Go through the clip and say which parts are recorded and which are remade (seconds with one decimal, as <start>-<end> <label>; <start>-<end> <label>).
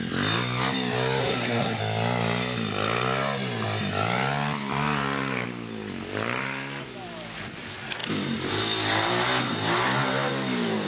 0.0-1.2 recorded; 1.2-1.8 remade; 1.8-10.9 recorded